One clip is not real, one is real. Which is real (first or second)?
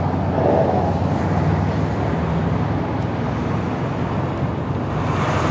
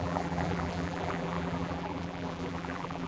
first